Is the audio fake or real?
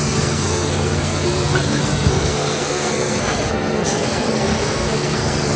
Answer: fake